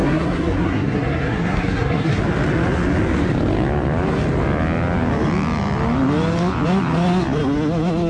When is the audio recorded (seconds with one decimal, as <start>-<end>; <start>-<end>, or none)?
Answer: 2.2-8.1